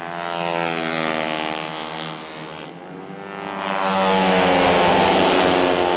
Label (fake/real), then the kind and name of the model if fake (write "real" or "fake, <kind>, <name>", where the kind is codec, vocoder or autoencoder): real